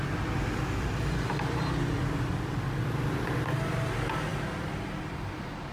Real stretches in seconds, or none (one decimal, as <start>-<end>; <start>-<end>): 0.0-5.7

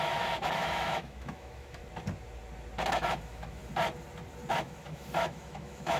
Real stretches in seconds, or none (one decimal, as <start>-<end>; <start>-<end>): 1.8-2.9; 3.6-4.5